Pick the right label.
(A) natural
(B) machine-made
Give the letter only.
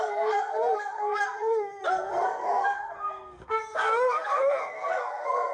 B